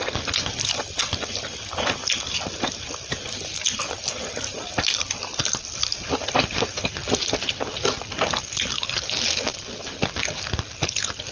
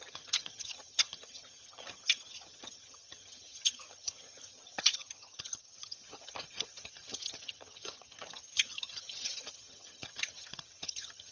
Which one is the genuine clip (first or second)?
first